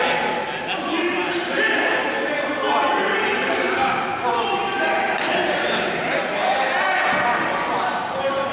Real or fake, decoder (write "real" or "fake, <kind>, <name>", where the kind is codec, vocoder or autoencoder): real